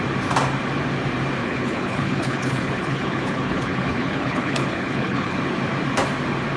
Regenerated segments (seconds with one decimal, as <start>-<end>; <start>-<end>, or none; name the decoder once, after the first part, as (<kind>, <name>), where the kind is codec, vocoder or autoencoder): 1.4-5.4 (codec, HILCodec)